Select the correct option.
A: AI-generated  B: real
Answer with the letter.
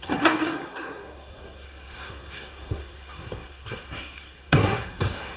A